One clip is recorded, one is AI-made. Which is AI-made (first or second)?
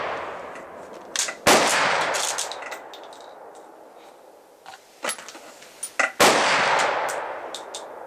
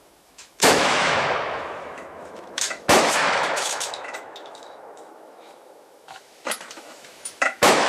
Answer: second